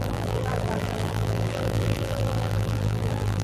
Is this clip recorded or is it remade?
remade